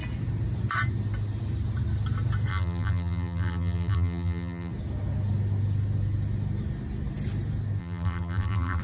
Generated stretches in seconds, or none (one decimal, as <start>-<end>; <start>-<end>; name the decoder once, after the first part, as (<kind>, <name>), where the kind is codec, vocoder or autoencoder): 2.5-4.7 (vocoder, BigVGAN v2); 7.8-8.8